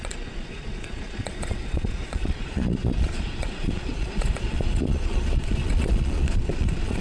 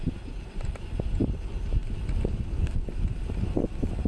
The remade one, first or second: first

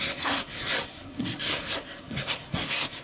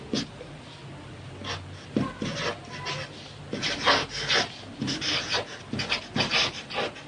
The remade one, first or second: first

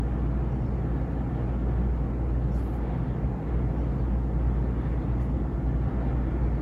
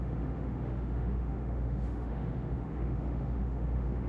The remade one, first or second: second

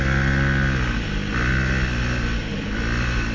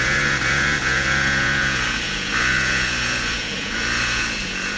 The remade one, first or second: second